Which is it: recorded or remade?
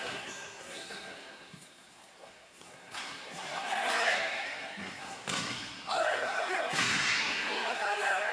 remade